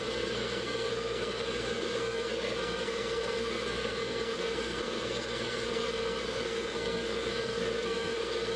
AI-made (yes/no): yes